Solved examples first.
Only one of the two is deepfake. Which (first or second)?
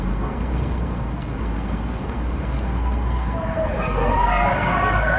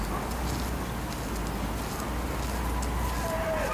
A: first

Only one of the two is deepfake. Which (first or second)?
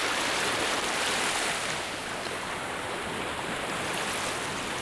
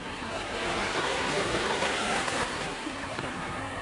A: second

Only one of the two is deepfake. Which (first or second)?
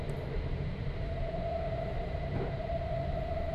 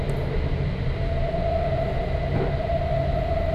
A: first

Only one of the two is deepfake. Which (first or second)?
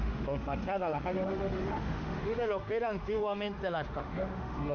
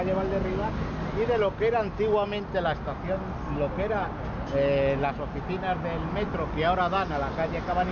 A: first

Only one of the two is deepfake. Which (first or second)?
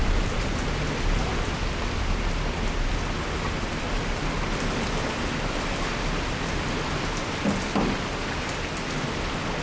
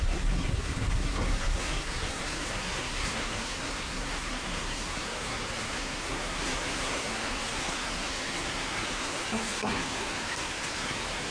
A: second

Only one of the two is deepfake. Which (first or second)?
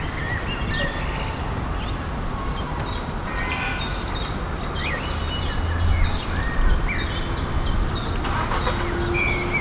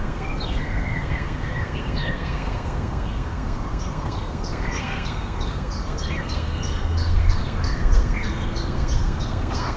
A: second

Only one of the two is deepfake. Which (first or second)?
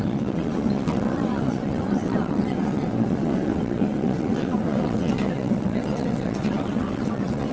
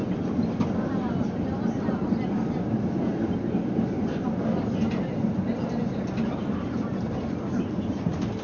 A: first